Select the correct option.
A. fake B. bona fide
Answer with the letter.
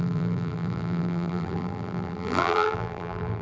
A